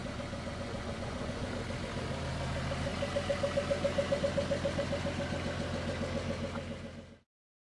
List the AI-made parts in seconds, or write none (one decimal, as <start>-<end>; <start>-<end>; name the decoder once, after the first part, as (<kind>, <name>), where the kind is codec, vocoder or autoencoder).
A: 0.0-1.5 (vocoder, Vocos)